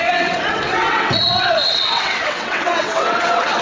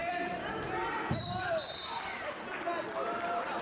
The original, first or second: second